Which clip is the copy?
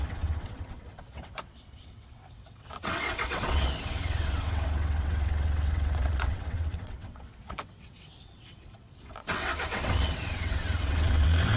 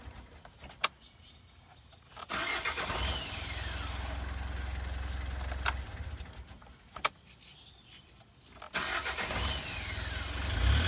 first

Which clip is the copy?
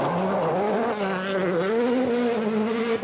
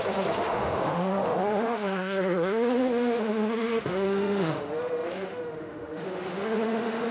second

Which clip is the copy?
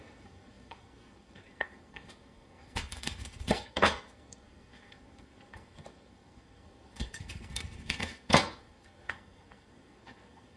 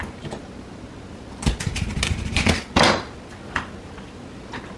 first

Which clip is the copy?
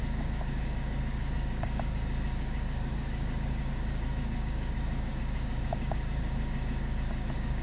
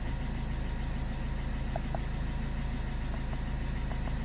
first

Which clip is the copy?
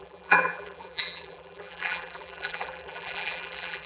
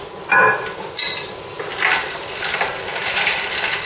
first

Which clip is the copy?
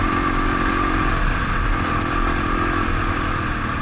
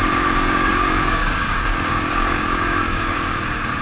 second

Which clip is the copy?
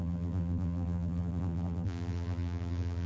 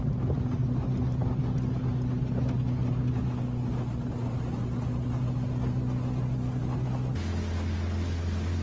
first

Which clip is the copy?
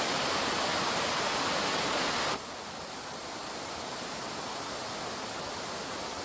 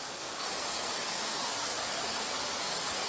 second